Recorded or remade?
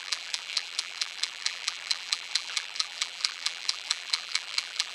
remade